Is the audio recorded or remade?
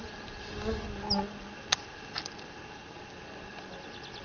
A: recorded